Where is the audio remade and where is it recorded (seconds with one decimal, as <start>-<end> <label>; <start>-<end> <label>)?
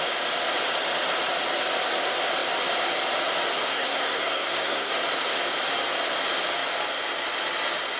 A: 0.0-3.7 recorded; 3.7-4.9 remade; 4.9-8.0 recorded